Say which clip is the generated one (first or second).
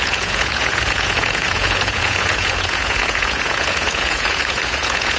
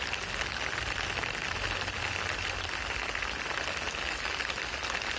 first